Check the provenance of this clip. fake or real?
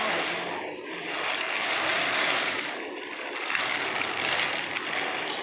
real